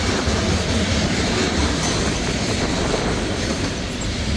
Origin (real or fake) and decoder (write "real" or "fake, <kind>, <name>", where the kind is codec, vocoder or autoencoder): fake, vocoder, BigVGAN v2